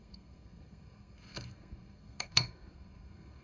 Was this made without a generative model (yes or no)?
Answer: no